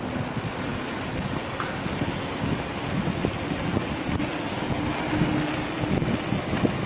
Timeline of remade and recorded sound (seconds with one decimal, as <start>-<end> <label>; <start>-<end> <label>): 0.0-3.7 recorded; 3.7-4.2 remade; 4.2-6.9 recorded